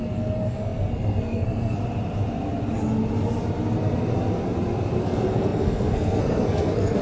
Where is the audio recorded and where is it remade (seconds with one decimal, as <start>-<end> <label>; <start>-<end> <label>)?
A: 0.0-1.8 remade; 1.8-5.0 recorded; 5.0-7.0 remade